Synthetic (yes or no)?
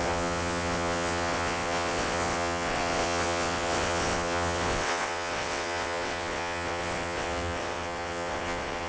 yes